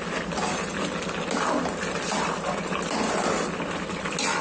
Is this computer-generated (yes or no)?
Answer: no